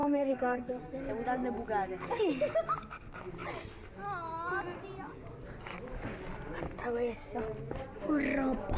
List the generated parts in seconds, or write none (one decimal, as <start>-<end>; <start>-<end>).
0.0-0.8